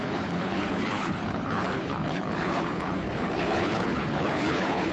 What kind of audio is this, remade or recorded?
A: remade